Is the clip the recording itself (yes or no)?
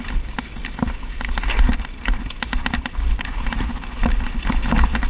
yes